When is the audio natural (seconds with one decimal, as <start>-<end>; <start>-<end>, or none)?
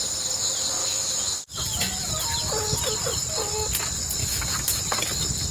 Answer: 0.0-0.8; 2.1-4.2; 4.8-5.5